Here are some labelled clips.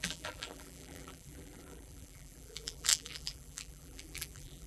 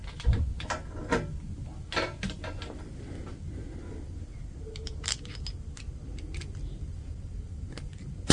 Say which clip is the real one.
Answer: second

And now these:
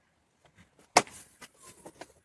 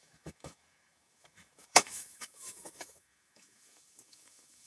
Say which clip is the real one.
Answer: first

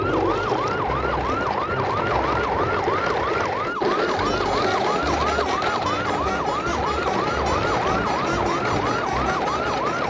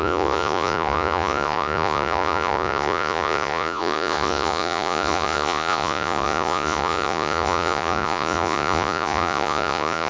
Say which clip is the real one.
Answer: first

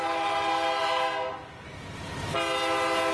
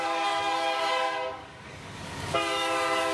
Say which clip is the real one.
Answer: first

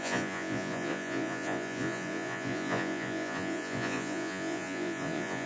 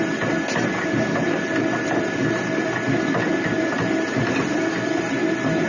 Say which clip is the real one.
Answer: second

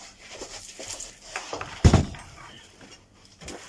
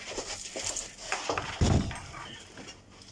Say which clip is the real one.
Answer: second